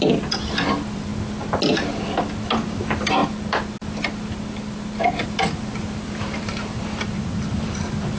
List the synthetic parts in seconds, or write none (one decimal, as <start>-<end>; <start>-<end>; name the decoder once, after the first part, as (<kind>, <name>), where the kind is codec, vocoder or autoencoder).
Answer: 0.0-1.1 (vocoder, BigVGAN v2); 2.7-3.2; 5.2-8.2